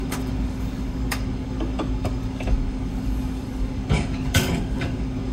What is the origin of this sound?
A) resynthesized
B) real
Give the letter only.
A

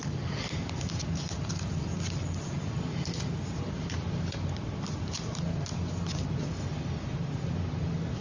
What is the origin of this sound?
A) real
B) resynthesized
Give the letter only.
A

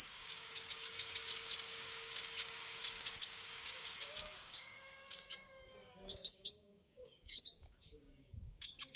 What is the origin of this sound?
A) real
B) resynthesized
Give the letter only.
B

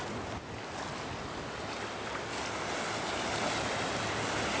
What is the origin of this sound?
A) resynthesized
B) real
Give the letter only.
B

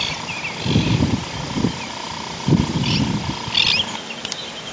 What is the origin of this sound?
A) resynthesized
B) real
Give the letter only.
B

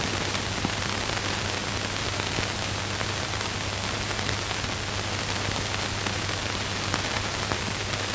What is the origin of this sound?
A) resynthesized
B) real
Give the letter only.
B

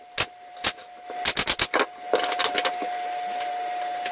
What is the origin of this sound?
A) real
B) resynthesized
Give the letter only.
A